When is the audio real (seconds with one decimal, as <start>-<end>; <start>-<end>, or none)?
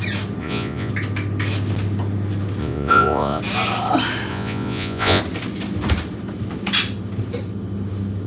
0.0-0.4; 0.9-2.6; 3.4-4.3; 5.2-8.3